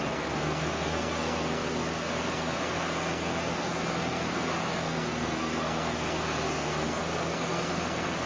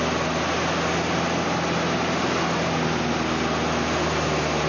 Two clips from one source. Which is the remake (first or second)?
first